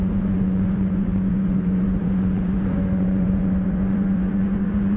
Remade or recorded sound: remade